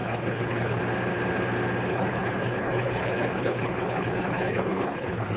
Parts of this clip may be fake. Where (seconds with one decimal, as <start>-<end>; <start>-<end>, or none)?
0.0-0.8; 1.9-5.4